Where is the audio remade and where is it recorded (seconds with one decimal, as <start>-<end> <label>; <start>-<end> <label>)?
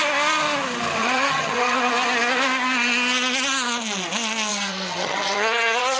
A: 0.0-1.0 recorded; 1.0-1.9 remade; 1.9-4.5 recorded; 4.5-6.0 remade